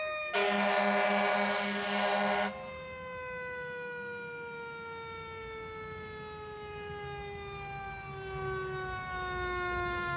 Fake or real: real